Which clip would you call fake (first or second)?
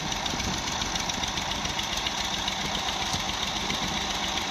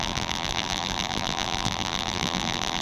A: second